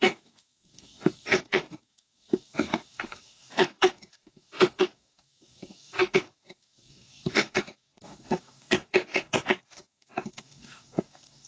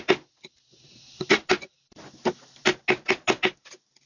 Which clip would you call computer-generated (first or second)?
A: first